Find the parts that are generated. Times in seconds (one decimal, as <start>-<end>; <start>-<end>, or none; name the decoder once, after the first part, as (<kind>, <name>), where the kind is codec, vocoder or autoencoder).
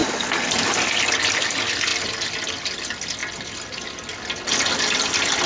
none